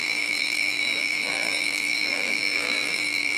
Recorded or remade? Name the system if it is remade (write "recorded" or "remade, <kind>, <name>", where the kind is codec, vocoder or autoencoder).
remade, vocoder, BigVGAN v2